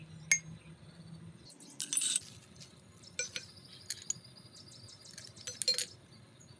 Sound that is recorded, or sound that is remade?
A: recorded